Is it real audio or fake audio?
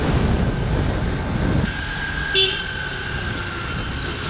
real